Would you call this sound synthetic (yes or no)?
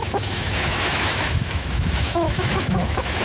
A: yes